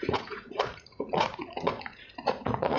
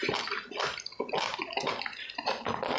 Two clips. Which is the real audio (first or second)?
second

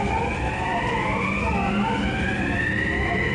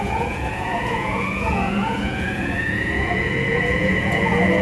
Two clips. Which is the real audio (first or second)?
first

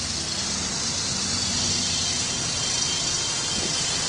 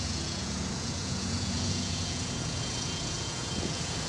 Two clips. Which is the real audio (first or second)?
first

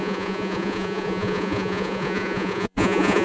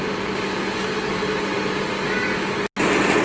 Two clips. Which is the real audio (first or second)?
second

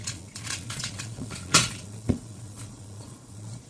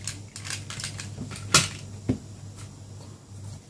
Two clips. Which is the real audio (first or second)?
second